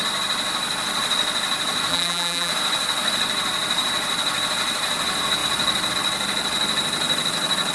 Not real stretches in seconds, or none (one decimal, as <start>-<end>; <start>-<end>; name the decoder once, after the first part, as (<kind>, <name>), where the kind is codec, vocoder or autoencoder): 1.9-2.5 (vocoder, BigVGAN v2)